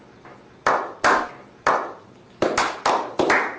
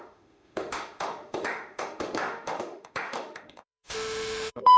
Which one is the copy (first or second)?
second